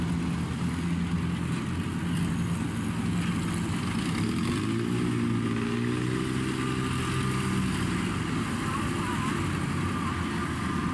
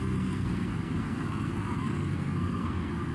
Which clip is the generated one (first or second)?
second